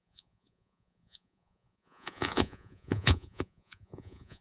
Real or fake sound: fake